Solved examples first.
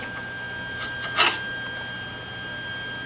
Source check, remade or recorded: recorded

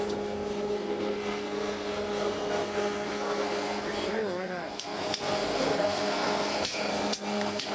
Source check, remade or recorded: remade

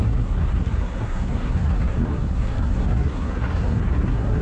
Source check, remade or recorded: remade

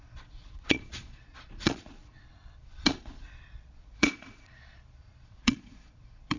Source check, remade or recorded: remade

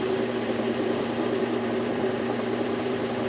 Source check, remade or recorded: remade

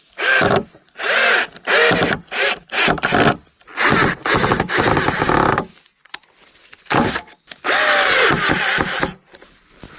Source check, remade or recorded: recorded